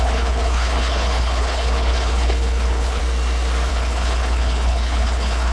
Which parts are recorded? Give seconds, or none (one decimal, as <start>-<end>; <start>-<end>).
3.0-3.7